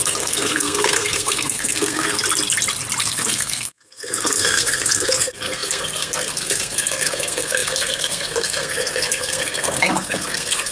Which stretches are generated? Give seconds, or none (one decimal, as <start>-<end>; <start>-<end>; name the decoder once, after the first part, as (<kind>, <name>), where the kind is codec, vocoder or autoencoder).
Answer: 0.0-2.2 (codec, SNAC); 3.0-10.7